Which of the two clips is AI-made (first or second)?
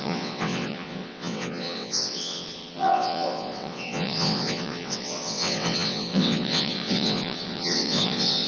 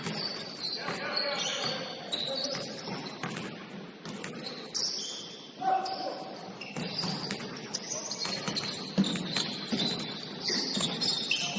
first